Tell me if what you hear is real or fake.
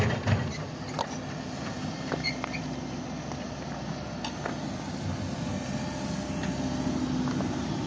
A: real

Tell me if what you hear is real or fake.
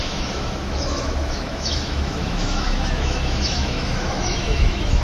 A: fake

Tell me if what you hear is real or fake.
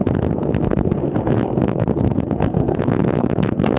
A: fake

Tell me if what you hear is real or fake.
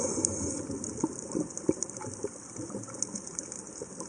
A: real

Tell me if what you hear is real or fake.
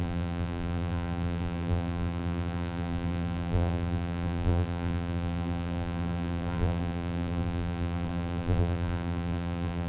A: fake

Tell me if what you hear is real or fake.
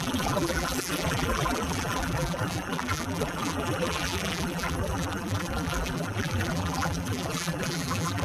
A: fake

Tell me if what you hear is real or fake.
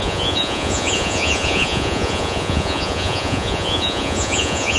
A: fake